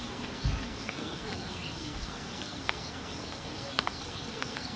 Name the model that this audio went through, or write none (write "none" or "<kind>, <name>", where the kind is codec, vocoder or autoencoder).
codec, SNAC